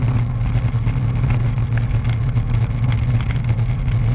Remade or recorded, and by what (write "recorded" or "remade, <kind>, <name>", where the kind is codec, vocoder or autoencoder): recorded